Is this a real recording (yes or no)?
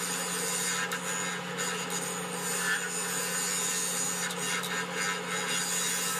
yes